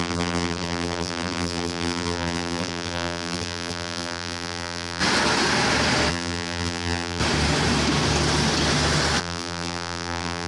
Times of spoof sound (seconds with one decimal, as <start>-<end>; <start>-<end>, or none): 0.0-5.0; 6.1-7.2; 9.2-10.5